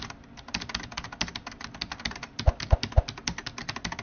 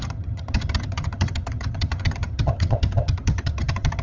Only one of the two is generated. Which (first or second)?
second